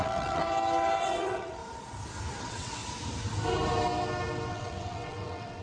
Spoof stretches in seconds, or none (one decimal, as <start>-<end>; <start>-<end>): 0.0-0.4; 1.0-1.6; 2.4-2.8; 4.5-5.6